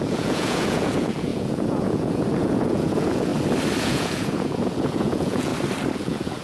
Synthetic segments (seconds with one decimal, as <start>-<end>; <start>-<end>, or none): 0.0-3.3; 3.8-5.5; 6.0-6.4

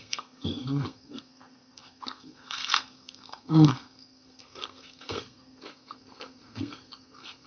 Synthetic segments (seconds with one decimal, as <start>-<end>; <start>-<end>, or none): 0.0-7.5

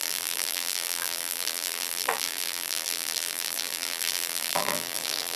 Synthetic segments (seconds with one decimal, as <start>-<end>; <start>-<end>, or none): 0.0-5.4

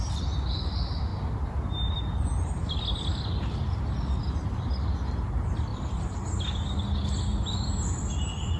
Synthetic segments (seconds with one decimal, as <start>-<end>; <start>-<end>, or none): none

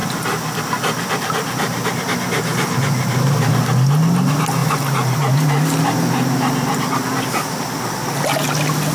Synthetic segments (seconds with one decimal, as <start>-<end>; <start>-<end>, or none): none

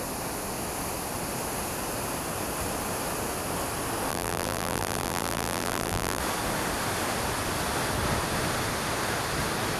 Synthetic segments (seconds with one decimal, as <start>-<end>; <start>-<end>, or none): 4.1-6.2

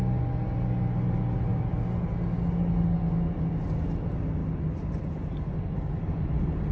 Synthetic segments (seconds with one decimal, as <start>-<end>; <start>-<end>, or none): none

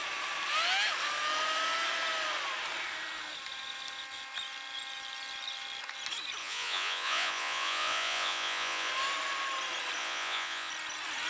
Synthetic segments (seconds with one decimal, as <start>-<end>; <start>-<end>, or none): 6.4-8.9; 10.0-10.7